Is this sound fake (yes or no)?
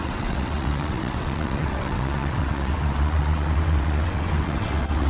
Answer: yes